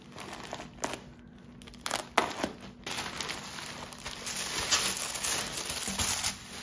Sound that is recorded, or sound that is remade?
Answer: recorded